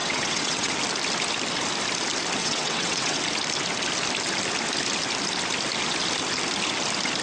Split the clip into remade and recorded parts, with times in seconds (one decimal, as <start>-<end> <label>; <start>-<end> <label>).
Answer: 0.0-0.7 remade; 0.7-2.4 recorded; 2.4-3.2 remade; 3.2-7.2 recorded